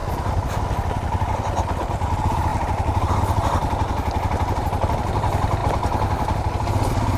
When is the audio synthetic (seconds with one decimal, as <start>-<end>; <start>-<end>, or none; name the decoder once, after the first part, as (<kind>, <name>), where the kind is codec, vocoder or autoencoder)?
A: 0.0-0.6 (vocoder, BigVGAN v2); 2.5-3.2